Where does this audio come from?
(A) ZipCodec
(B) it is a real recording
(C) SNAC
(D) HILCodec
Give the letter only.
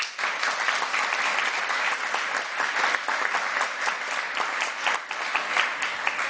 B